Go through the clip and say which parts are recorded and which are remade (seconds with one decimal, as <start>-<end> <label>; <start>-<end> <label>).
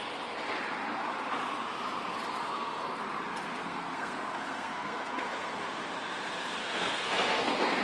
0.0-2.4 recorded; 2.4-3.0 remade; 3.0-3.6 recorded; 3.6-5.6 remade; 5.6-6.6 recorded; 6.6-7.8 remade